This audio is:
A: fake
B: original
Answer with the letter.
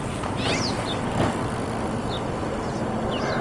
B